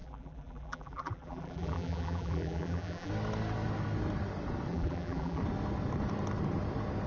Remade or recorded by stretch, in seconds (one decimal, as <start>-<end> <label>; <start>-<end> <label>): 0.0-3.1 remade; 3.1-4.7 recorded; 4.7-5.4 remade; 5.4-7.1 recorded